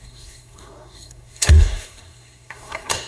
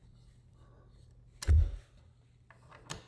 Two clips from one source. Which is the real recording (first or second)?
second